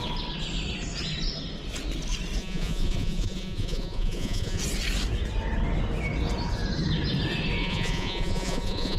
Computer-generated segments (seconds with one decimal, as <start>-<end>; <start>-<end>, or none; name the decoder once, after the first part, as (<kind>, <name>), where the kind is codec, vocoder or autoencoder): 2.4-4.6 (vocoder, Vocos); 7.6-9.0